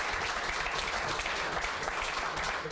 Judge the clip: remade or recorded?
recorded